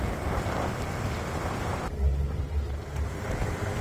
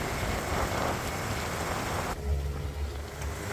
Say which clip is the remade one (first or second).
first